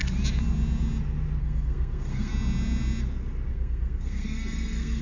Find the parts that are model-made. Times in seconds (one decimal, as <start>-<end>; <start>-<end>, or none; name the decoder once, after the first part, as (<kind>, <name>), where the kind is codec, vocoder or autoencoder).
1.4-2.3 (codec, SNAC); 3.5-5.0